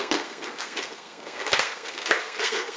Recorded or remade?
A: remade